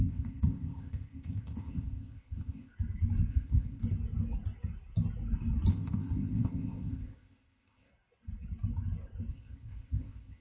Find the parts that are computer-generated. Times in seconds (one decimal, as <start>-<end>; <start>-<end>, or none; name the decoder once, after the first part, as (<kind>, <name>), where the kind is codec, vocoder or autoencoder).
0.0-2.7 (codec, ZipCodec); 3.3-3.8; 5.7-7.9; 9.3-10.4